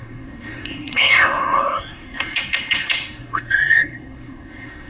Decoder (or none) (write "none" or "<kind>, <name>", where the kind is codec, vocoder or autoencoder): codec, SNAC